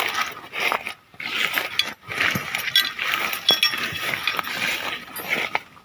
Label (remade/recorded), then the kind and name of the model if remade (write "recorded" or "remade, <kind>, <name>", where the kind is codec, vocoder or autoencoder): recorded